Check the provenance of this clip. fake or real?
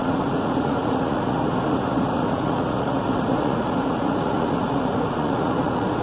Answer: fake